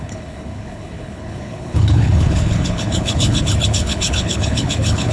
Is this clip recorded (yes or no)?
no